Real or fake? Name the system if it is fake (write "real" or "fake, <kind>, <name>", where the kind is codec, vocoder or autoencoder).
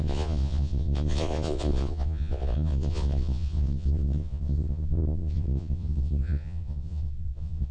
fake, vocoder, Vocos